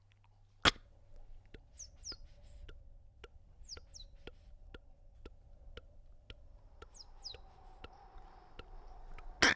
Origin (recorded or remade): recorded